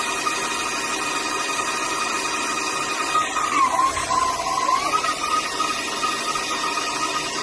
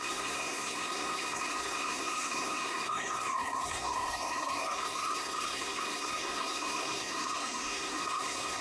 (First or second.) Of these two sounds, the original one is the first